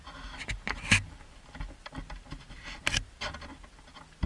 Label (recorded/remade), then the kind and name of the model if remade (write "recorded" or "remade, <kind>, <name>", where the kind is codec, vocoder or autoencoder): recorded